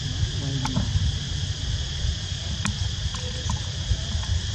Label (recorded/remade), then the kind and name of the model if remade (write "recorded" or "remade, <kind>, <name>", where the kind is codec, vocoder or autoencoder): recorded